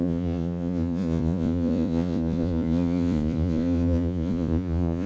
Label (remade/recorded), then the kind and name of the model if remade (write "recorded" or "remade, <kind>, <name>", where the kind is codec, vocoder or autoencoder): remade, vocoder, Vocos